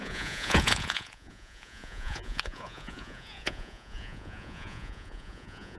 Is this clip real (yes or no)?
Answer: no